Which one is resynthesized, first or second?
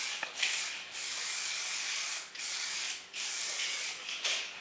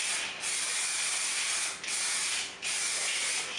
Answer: first